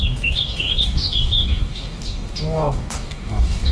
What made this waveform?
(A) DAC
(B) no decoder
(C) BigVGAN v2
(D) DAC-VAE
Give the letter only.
A